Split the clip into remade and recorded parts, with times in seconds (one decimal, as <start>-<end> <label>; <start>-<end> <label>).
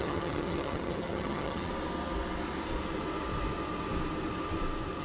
0.0-1.7 remade; 1.7-5.0 recorded